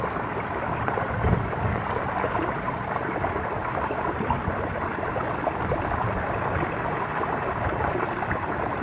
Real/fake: real